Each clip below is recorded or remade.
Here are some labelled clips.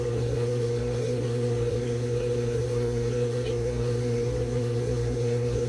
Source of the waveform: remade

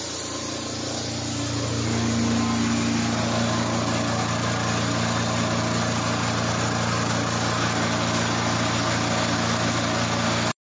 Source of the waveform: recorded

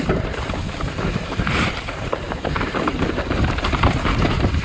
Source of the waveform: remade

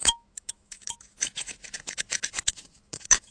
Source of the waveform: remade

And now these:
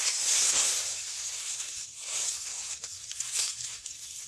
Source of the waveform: remade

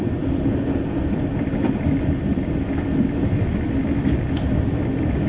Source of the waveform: remade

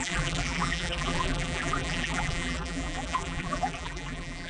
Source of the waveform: remade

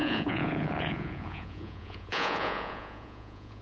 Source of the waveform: remade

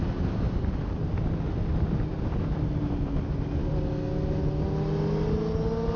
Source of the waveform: recorded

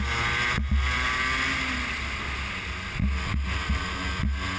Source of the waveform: recorded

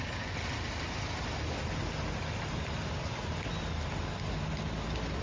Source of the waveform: recorded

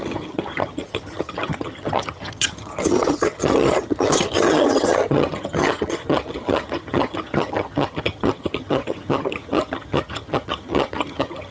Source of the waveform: remade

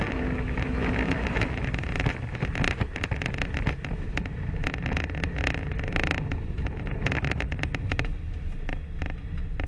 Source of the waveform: recorded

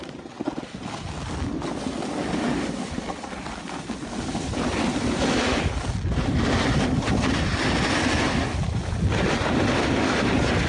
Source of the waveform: recorded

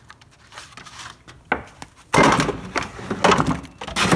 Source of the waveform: recorded